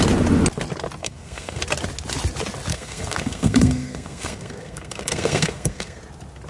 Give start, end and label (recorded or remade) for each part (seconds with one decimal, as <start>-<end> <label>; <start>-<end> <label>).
0.0-1.0 recorded; 1.0-1.6 remade; 1.6-2.7 recorded; 2.7-6.0 remade; 6.0-6.5 recorded